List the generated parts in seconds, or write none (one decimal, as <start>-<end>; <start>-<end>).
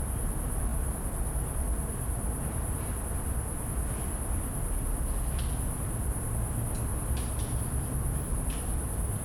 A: none